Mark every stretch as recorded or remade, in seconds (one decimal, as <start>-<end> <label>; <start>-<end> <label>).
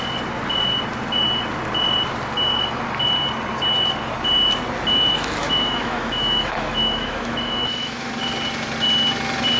0.0-5.4 recorded; 5.4-8.1 remade; 8.1-9.6 recorded